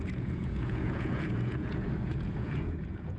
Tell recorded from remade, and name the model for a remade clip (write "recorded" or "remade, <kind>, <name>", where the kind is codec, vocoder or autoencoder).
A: remade, vocoder, Vocos